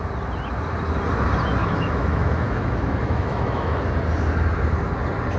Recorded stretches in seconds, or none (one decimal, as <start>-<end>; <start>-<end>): 0.0-1.6; 3.8-5.4

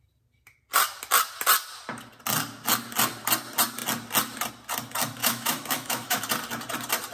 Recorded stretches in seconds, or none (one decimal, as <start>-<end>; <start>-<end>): 0.0-5.2; 6.2-7.1

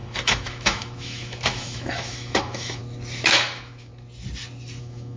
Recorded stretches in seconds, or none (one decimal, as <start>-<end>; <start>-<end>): 2.8-3.3; 3.9-4.8